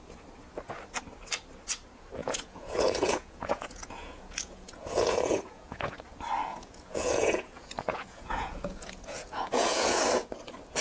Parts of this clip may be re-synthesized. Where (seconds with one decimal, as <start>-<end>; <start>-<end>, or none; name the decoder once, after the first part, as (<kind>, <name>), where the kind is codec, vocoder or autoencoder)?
2.2-6.0 (vocoder, Vocos); 6.5-10.0

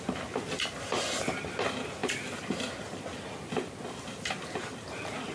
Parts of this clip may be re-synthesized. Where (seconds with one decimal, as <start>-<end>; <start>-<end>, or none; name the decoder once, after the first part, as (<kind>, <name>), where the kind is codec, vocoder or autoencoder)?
none

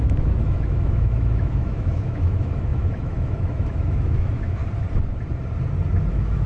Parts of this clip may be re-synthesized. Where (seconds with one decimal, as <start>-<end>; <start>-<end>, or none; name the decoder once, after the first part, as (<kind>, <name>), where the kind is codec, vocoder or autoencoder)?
0.0-4.6 (autoencoder, DAC-VAE); 6.1-6.5

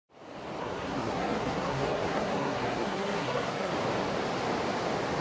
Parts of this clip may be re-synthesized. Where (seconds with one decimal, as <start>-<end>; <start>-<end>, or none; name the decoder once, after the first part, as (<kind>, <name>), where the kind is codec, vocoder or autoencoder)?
0.6-3.7 (codec, SNAC)

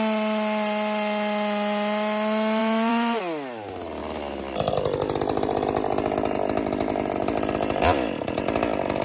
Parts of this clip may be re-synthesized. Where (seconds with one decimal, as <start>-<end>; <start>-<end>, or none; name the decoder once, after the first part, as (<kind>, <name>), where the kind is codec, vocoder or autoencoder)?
2.6-3.2 (vocoder, BigVGAN v2); 4.0-4.7

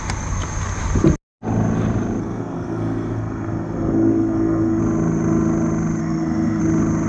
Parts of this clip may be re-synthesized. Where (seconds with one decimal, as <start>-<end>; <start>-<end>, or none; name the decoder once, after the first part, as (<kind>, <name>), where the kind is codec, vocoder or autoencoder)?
2.2-4.8 (codec, SNAC); 6.0-6.6